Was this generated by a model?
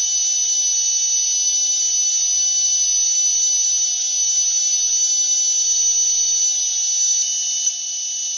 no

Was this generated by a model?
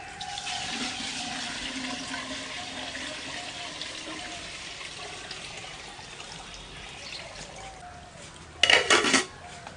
no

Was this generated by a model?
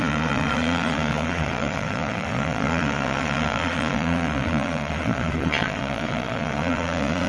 yes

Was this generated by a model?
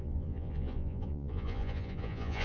yes